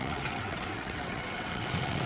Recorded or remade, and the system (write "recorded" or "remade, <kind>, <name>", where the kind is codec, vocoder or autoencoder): remade, vocoder, WaveNeXt